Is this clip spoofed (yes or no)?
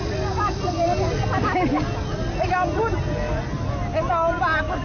no